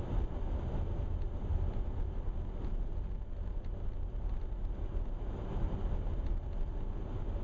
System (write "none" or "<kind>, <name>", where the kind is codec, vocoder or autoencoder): none